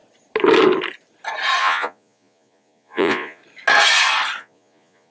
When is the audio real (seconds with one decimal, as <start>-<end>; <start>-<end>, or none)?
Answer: 0.0-1.6; 3.4-4.4